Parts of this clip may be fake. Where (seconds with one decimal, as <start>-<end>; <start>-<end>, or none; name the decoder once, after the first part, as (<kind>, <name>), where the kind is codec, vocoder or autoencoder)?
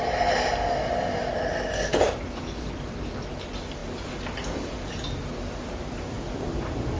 none